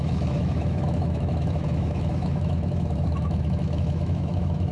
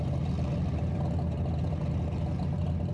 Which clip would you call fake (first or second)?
first